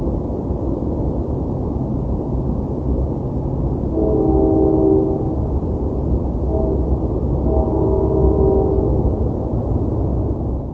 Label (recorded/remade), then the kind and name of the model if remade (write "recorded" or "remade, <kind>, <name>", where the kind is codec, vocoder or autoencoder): recorded